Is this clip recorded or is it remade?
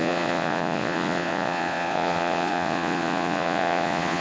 remade